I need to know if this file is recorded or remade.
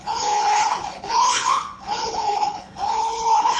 remade